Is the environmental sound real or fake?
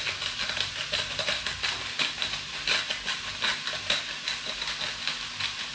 real